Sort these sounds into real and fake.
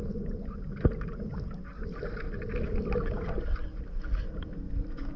real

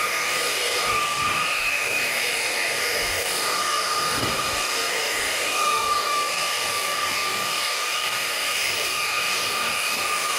fake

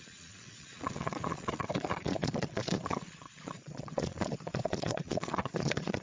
fake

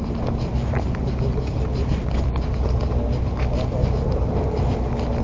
real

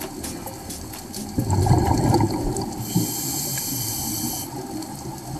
real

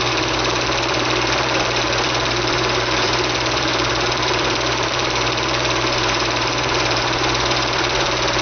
fake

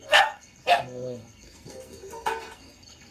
fake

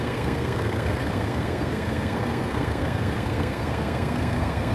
fake